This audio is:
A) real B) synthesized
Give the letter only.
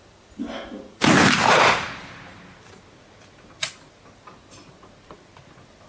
A